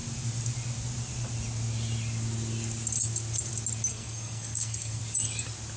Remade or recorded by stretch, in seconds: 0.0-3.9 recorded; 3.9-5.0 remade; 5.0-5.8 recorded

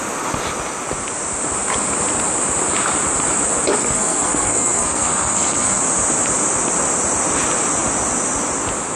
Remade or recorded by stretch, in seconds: 0.0-3.8 recorded; 3.8-5.8 remade; 5.8-9.0 recorded

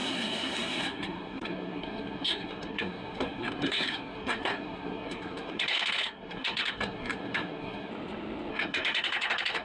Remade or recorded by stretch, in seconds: 0.0-7.9 remade; 7.9-8.5 recorded; 8.5-9.6 remade

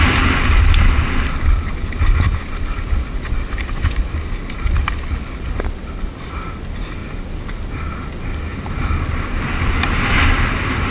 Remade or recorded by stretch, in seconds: 0.0-10.9 recorded

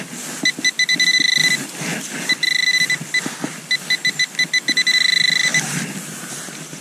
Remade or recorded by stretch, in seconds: 0.0-6.8 recorded